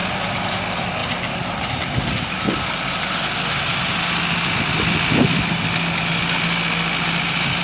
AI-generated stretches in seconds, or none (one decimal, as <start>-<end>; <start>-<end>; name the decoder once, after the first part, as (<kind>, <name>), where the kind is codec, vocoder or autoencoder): none